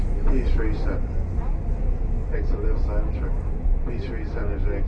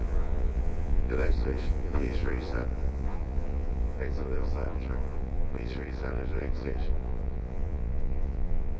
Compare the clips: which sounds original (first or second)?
first